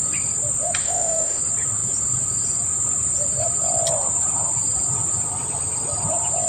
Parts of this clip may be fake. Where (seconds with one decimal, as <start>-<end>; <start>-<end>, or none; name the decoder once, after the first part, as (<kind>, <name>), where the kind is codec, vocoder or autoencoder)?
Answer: 0.8-1.4 (autoencoder, DAC-VAE)

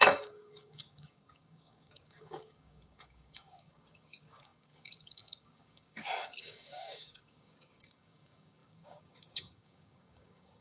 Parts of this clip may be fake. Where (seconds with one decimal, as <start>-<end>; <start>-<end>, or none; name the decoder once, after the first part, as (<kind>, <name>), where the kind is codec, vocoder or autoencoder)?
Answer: 0.0-10.6 (codec, DAC)

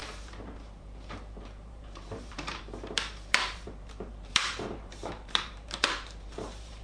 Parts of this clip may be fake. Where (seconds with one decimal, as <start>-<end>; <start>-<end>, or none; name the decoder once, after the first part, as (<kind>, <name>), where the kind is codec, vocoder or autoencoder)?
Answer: 0.0-6.8 (vocoder, BigVGAN v2)

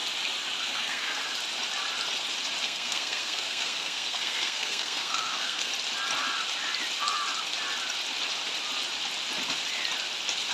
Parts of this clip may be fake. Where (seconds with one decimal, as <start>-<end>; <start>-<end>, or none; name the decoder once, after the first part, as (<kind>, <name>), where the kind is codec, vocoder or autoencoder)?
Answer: 0.6-1.2 (codec, SNAC); 2.6-5.7